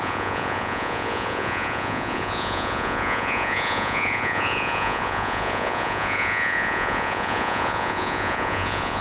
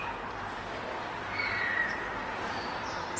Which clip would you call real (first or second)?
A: second